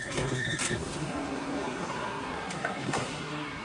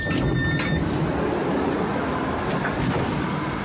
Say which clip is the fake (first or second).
first